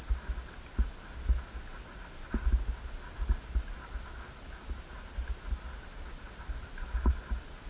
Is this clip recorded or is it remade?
recorded